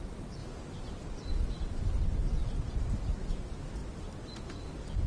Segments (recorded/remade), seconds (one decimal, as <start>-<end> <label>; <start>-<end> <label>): 0.0-3.8 recorded; 3.8-4.6 remade; 4.6-5.1 recorded

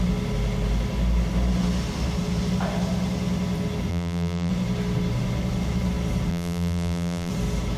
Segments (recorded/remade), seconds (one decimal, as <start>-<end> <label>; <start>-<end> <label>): 0.0-3.9 recorded; 3.9-4.5 remade; 4.5-6.3 recorded; 6.3-7.3 remade; 7.3-7.8 recorded

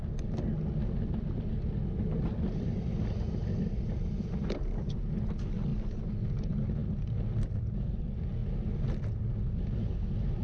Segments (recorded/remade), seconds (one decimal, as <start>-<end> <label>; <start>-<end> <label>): 0.0-10.4 recorded

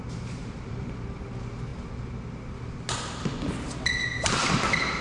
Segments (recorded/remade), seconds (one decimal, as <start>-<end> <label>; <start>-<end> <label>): 0.0-1.7 remade; 1.7-5.0 recorded